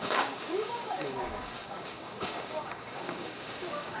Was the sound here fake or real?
fake